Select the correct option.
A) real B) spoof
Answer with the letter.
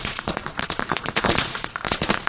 B